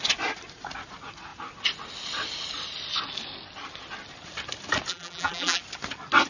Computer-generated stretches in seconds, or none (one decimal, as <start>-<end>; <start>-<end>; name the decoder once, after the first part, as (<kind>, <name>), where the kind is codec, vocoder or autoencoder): 4.9-5.6 (vocoder, BigVGAN v2)